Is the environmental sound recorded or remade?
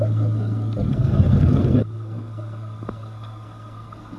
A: remade